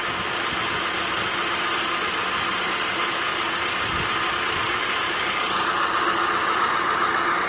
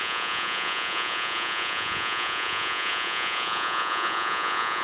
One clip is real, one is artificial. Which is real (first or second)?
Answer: first